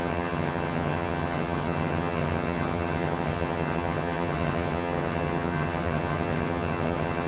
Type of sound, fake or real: fake